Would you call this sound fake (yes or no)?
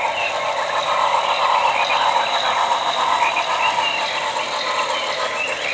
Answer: no